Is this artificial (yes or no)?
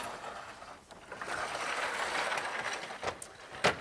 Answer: no